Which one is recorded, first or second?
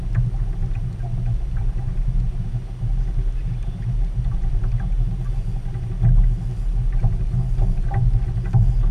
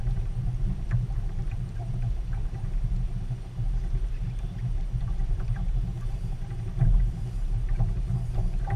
first